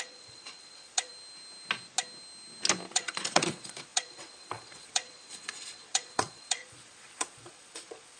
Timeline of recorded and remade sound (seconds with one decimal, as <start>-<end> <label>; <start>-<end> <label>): 0.0-1.1 remade; 1.1-2.9 recorded; 2.9-8.2 remade